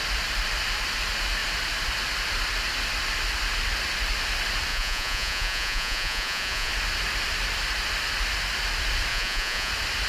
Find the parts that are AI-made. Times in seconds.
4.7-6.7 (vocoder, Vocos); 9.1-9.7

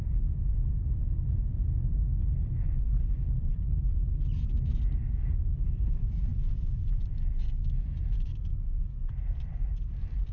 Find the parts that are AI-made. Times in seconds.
0.4-1.4 (vocoder, BigVGAN v2); 6.3-10.3

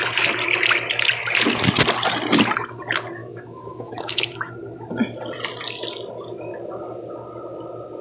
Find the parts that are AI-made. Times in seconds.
3.2-4.5 (autoencoder, DAC-VAE)

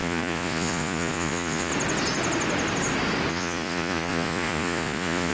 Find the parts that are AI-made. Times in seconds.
0.0-1.7 (vocoder, Vocos); 3.3-5.3

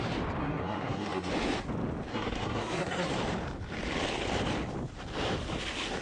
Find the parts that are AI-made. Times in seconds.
0.4-1.3 (codec, SNAC); 2.1-3.1

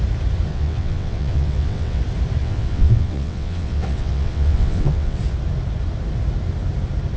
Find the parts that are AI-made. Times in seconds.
0.5-2.0 (vocoder, WaveNeXt); 2.4-5.2